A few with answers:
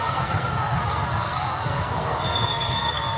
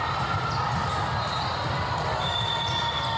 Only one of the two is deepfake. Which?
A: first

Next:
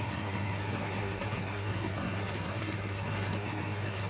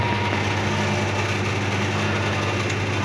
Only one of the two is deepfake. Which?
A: first